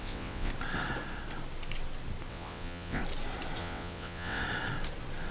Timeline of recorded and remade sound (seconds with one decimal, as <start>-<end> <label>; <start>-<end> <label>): 0.0-0.5 remade; 0.5-2.3 recorded; 2.3-3.0 remade; 3.0-3.6 recorded; 3.6-4.4 remade; 4.4-5.3 recorded